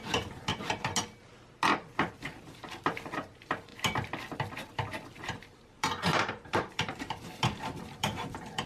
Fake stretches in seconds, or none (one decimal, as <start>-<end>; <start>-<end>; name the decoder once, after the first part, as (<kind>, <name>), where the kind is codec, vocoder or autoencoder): 0.0-0.5 (vocoder, BigVGAN v2); 2.1-3.7; 5.2-8.7